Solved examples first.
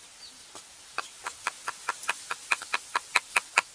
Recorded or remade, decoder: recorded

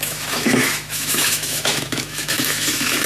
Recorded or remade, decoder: remade, autoencoder, DAC-VAE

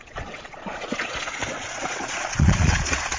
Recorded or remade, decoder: remade, vocoder, Vocos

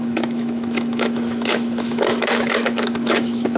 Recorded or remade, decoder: remade, autoencoder, DAC-VAE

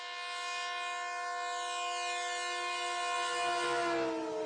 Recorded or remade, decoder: recorded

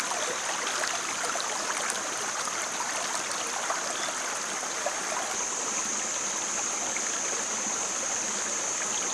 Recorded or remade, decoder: recorded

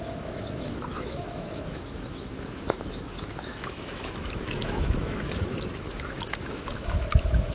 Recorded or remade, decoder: remade, autoencoder, DAC-VAE